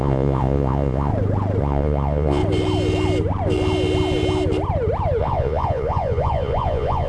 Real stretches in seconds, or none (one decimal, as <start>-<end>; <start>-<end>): 1.1-1.6; 2.4-5.2